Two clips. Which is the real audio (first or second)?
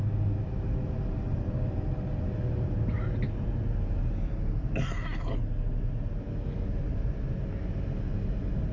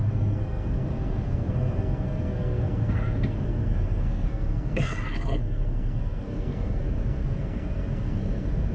first